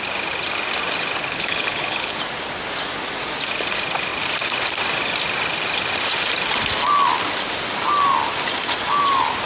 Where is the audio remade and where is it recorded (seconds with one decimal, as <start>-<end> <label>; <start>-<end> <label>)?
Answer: 0.0-1.2 recorded; 1.2-2.2 remade; 2.2-9.5 recorded